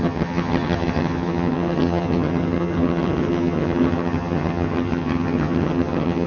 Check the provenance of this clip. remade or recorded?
remade